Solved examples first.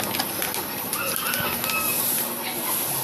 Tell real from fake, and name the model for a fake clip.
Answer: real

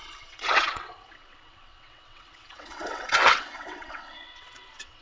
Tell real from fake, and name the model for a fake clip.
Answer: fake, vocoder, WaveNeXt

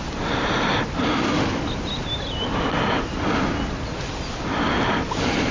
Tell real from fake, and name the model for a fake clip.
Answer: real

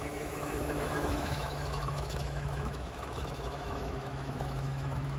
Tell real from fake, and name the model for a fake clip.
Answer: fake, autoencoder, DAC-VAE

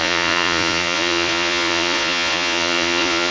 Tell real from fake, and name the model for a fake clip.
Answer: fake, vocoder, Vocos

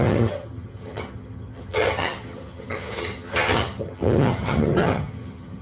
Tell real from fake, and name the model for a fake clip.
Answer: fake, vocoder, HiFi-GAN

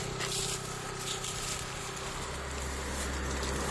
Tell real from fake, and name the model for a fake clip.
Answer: real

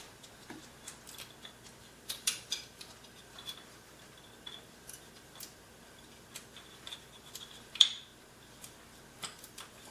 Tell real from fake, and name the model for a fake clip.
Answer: fake, vocoder, BigVGAN v2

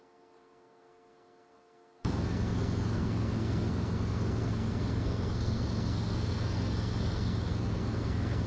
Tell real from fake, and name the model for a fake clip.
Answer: fake, codec, SNAC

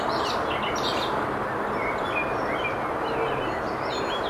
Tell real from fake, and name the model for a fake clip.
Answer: real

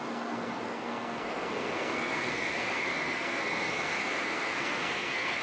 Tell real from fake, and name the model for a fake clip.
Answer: fake, codec, SNAC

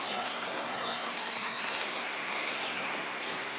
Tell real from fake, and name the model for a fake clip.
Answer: fake, codec, SNAC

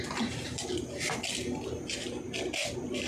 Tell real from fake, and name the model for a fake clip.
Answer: real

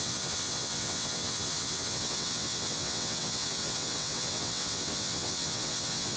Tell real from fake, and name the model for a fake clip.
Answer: fake, vocoder, WaveNeXt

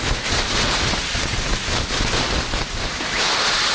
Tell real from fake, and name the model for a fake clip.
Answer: real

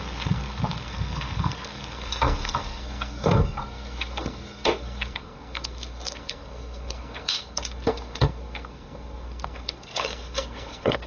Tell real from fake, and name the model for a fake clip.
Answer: fake, codec, SNAC